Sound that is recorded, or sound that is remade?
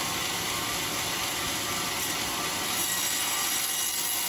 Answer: recorded